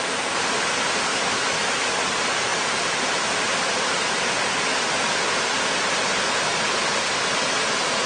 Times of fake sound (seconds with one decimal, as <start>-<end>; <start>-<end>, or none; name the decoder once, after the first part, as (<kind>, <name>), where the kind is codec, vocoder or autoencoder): 1.1-1.9 (autoencoder, DAC-VAE)